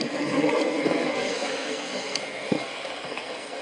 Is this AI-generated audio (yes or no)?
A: yes